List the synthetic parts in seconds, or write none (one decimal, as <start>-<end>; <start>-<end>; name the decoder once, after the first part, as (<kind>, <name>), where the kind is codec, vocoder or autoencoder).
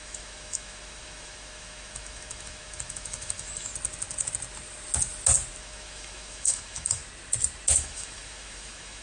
0.0-3.7 (autoencoder, DAC-VAE); 5.6-7.0; 7.8-9.0